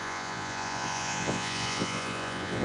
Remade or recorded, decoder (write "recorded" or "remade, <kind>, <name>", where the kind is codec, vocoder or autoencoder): remade, vocoder, Vocos